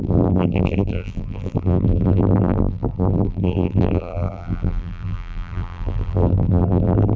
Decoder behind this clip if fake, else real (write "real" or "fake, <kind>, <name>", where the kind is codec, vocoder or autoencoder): fake, vocoder, BigVGAN v2